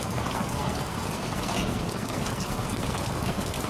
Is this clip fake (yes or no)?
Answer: yes